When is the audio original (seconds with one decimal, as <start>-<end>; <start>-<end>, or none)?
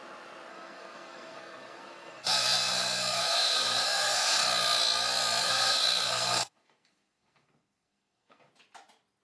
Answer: 0.0-0.5; 4.4-5.4; 8.5-9.2